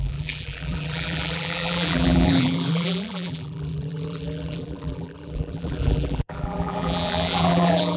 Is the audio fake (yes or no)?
yes